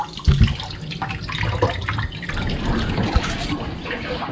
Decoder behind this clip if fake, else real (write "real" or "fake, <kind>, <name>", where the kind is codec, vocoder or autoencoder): real